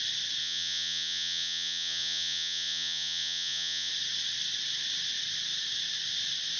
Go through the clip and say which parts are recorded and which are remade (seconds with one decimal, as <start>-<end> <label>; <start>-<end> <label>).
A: 0.0-0.4 recorded; 0.4-3.9 remade; 3.9-6.6 recorded